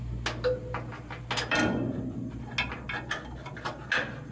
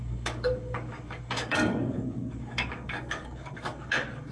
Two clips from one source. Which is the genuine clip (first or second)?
first